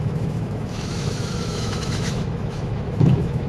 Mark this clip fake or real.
fake